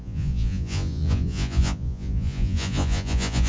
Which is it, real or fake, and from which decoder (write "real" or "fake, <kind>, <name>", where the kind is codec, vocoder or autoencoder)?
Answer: fake, vocoder, Vocos